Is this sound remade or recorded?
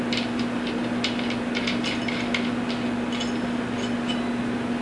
recorded